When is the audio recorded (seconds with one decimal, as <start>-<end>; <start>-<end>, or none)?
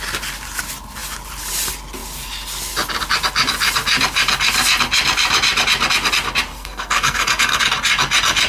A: 0.0-6.5; 7.6-8.5